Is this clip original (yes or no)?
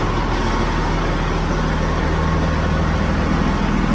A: yes